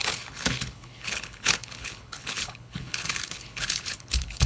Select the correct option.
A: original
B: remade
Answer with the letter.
B